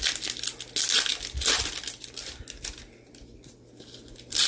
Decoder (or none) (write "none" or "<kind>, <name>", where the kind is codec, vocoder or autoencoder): none